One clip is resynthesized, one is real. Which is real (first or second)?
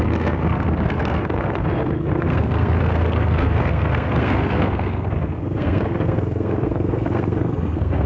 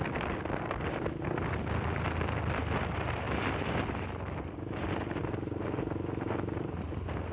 second